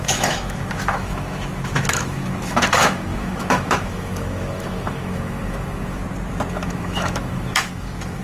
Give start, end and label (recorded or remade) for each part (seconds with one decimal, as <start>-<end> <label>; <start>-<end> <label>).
0.0-6.0 remade; 6.0-6.5 recorded; 6.5-8.2 remade